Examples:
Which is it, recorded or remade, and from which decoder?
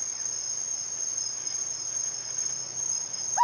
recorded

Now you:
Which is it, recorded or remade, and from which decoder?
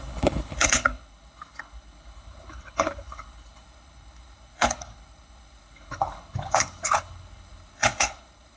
remade, codec, HILCodec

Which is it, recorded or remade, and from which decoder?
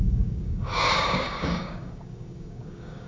remade, codec, DAC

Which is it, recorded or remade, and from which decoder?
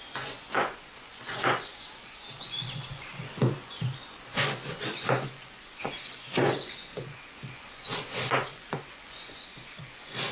remade, vocoder, Vocos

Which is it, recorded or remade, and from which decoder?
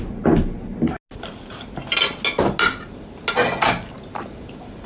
recorded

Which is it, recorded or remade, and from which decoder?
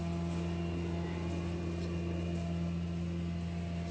recorded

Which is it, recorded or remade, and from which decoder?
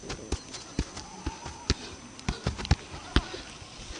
recorded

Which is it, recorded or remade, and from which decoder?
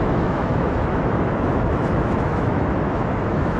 remade, autoencoder, DAC-VAE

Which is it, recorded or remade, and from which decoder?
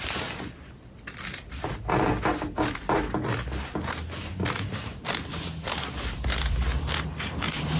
remade, vocoder, BigVGAN v2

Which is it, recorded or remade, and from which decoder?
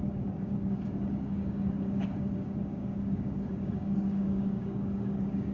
remade, codec, DAC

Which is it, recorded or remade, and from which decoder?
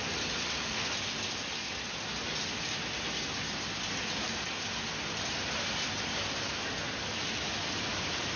recorded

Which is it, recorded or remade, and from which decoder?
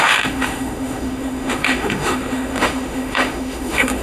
remade, autoencoder, DAC-VAE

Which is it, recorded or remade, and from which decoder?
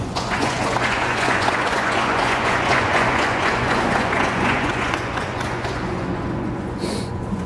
remade, vocoder, Vocos